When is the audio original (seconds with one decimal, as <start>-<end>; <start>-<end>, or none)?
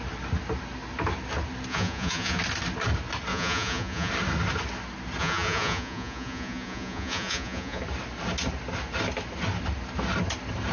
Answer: 0.0-1.7; 2.4-3.3; 4.1-5.2; 7.8-10.7